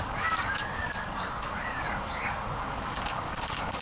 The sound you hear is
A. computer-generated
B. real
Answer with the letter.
A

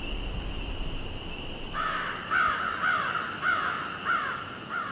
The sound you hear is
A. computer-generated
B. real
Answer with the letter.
B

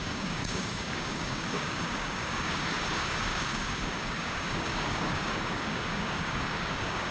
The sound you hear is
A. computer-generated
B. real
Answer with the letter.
A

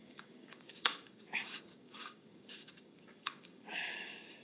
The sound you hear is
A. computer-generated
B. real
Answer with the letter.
A